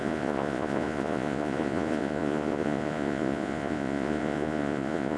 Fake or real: fake